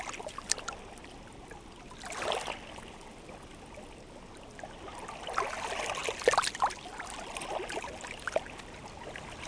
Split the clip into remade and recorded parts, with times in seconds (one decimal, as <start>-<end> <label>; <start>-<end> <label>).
0.0-9.5 recorded